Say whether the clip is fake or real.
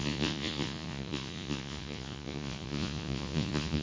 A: fake